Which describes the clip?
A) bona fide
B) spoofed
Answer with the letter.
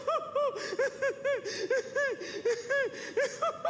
A